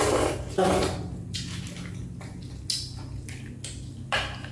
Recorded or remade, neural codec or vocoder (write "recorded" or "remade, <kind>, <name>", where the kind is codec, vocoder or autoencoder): recorded